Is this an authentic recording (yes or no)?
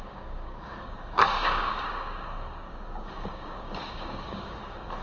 no